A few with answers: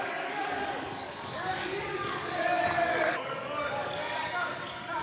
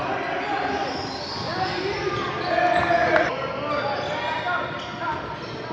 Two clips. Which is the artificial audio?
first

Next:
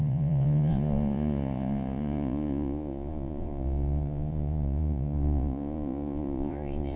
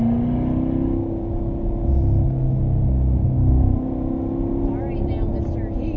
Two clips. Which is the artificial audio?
first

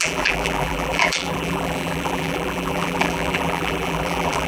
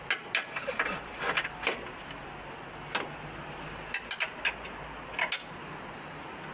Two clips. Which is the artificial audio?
first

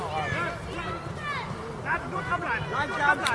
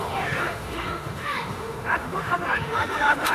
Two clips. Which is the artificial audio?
second